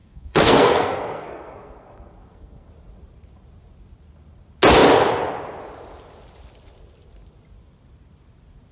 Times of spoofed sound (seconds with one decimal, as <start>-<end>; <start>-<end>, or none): 0.0-2.7